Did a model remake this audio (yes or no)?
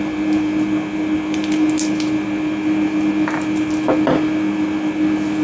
no